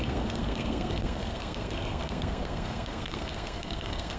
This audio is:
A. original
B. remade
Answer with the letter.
B